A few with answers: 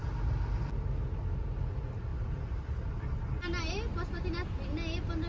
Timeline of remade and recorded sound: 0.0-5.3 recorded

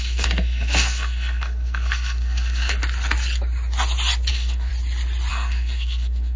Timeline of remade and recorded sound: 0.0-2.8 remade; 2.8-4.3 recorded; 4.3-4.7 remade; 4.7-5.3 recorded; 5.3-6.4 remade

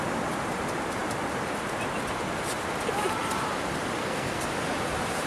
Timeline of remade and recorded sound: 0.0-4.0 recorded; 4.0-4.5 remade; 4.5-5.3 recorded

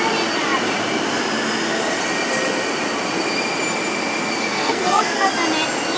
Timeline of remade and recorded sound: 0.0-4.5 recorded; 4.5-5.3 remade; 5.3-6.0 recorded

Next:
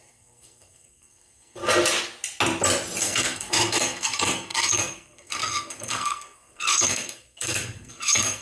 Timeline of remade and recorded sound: 0.0-1.6 remade; 1.6-3.0 recorded; 3.0-8.4 remade

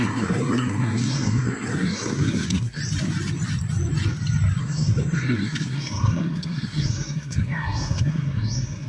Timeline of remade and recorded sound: 0.0-2.8 remade; 2.8-4.6 recorded; 4.6-8.9 remade